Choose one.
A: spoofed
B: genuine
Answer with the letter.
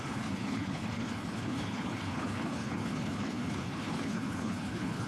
A